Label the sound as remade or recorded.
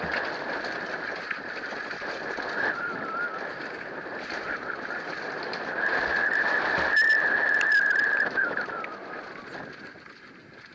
recorded